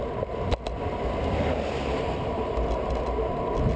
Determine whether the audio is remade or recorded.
recorded